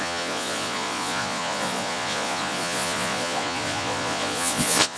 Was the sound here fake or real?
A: fake